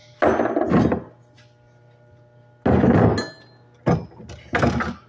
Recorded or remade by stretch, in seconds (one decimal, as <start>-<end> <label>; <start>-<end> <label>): 0.0-5.1 recorded